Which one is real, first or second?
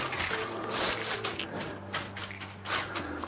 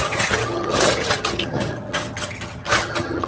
first